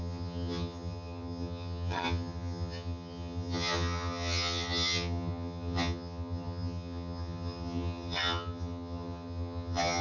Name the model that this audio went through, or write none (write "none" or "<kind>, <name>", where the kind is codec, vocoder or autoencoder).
vocoder, HiFi-GAN